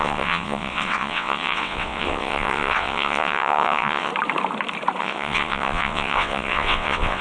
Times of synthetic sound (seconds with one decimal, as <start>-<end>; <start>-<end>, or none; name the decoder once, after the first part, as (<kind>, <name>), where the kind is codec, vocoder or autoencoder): 0.0-4.1 (vocoder, WaveNeXt); 5.0-7.2